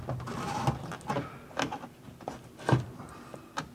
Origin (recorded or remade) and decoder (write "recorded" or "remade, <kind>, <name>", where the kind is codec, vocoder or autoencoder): recorded